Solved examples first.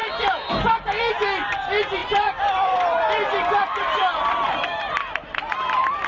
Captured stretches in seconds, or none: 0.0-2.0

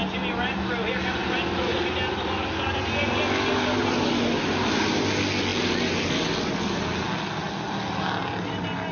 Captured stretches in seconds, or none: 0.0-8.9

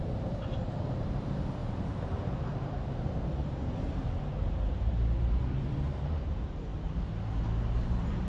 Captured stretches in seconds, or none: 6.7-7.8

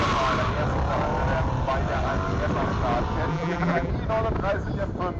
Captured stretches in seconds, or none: 0.0-3.3; 3.9-5.2

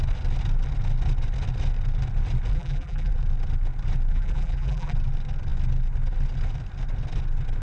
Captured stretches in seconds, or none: 0.0-2.5; 3.1-4.1; 4.9-7.6

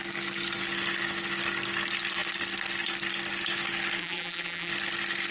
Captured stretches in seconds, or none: 0.0-4.0; 4.7-5.3

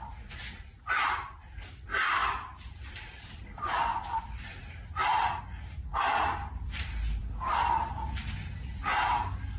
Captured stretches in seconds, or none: 0.0-2.2; 5.4-9.6

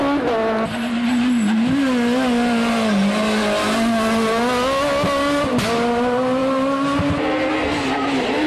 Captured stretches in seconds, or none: 0.0-8.5